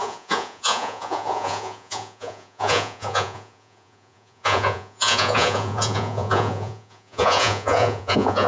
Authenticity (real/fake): fake